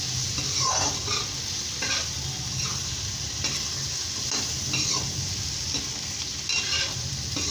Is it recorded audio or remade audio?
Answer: recorded